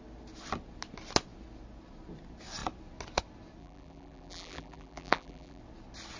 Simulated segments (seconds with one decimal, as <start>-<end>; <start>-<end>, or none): 3.6-5.6